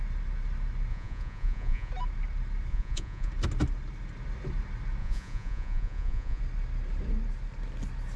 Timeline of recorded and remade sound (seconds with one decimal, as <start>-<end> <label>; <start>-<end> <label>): 0.0-0.9 recorded; 0.9-1.9 remade; 1.9-2.7 recorded; 2.7-3.3 remade; 3.3-5.0 recorded; 5.0-6.4 remade; 6.4-8.2 recorded